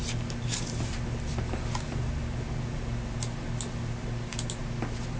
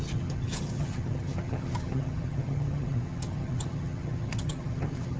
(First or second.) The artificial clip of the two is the second